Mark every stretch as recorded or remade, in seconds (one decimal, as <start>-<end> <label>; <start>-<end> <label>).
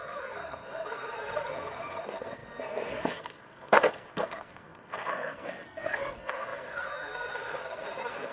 0.0-8.3 remade